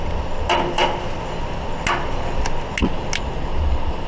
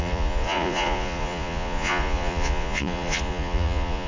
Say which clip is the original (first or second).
first